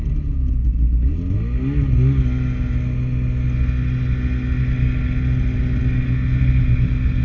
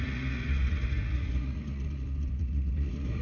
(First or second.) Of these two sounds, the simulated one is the second